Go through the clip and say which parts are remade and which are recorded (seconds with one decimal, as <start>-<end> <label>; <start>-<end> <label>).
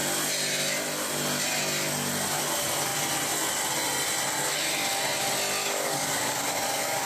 0.0-5.6 recorded; 5.6-7.1 remade